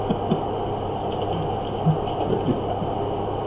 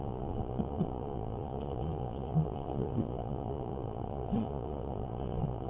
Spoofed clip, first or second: second